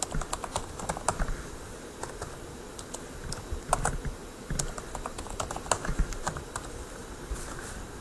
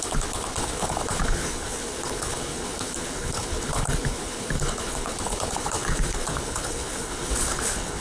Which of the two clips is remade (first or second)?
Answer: second